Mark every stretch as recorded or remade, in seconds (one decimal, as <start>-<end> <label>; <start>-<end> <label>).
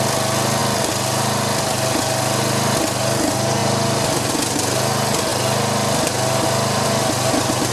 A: 0.0-0.6 recorded; 0.6-2.8 remade; 2.8-3.6 recorded; 3.6-4.3 remade; 4.3-5.3 recorded; 5.3-7.7 remade